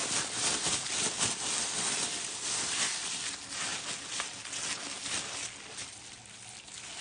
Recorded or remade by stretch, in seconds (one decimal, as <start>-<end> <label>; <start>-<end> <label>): 0.0-7.0 recorded